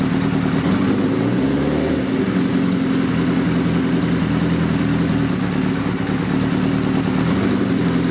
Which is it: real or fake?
real